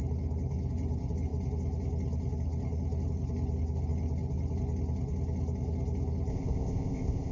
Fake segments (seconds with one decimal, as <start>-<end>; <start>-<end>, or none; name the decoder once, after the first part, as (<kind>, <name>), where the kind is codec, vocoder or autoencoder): 6.3-7.3 (codec, ZipCodec)